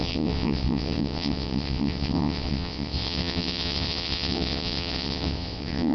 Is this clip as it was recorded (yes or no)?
no